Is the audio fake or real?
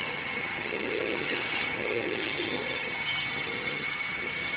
fake